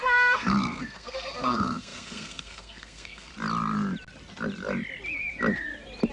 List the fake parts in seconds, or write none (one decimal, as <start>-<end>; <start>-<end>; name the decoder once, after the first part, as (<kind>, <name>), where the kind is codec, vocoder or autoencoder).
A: 0.0-3.3 (codec, SNAC)